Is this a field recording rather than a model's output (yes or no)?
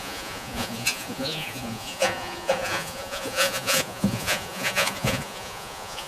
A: no